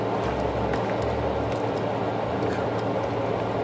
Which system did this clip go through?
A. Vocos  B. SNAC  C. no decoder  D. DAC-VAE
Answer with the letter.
C